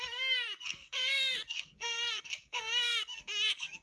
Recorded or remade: remade